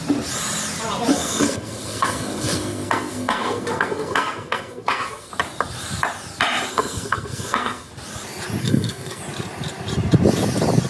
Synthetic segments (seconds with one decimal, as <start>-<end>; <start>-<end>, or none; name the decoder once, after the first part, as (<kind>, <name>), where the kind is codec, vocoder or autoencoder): 1.1-5.3 (codec, SNAC); 6.7-7.9; 8.6-9.2